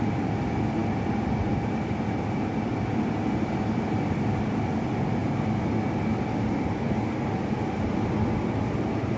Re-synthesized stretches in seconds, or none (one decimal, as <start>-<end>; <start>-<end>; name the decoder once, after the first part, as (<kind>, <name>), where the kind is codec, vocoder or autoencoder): none